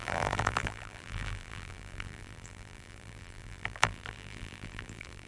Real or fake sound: fake